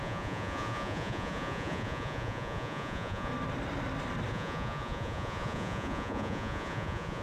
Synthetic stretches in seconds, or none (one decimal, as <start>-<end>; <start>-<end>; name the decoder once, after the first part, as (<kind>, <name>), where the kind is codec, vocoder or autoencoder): 0.0-3.3 (vocoder, Vocos); 4.3-7.2